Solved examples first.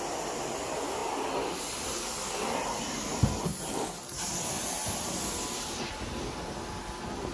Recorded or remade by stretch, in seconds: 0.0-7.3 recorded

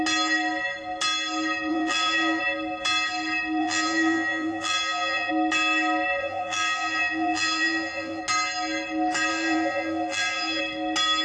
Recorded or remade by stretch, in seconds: 0.0-1.7 recorded; 1.7-2.4 remade; 2.4-3.6 recorded; 3.6-5.3 remade; 5.3-6.2 recorded; 6.2-8.2 remade; 8.2-9.3 recorded; 9.3-10.6 remade; 10.6-11.2 recorded